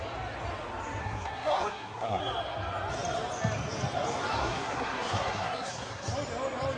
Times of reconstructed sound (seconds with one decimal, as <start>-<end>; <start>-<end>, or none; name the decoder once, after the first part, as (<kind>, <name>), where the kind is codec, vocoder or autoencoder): 1.0-2.2 (codec, SNAC); 4.4-6.1